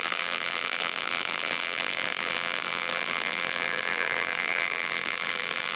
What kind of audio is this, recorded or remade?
remade